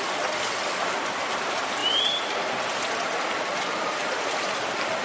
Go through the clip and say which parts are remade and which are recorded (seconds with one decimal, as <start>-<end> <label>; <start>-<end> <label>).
0.0-5.0 recorded